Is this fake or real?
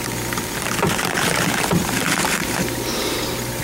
fake